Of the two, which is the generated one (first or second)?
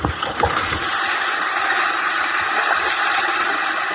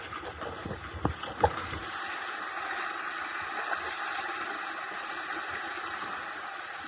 first